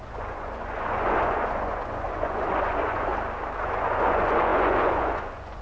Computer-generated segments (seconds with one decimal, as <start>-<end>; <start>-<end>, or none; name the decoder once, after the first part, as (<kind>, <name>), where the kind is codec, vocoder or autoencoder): 0.0-3.1 (vocoder, Vocos); 3.6-5.6